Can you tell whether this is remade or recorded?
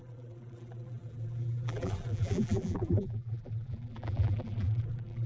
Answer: remade